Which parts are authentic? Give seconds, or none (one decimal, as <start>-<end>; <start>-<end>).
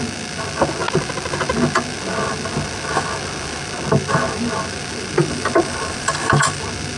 0.0-5.2; 6.6-7.0